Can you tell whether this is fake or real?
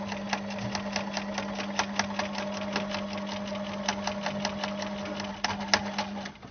real